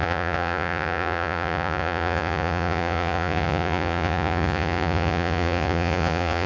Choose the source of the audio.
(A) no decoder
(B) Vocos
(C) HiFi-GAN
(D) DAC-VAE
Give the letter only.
B